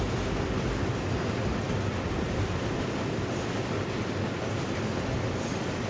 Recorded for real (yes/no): yes